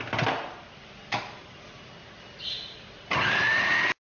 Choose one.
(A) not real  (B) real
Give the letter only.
B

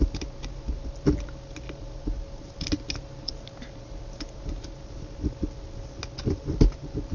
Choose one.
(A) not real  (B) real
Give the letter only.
B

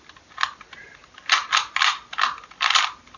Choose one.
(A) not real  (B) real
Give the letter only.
B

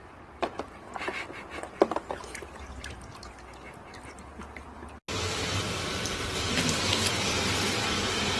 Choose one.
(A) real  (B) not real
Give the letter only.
A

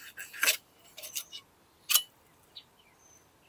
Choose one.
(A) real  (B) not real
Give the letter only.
A